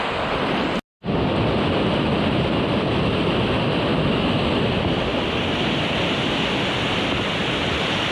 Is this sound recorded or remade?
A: recorded